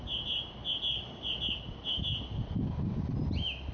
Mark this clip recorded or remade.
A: recorded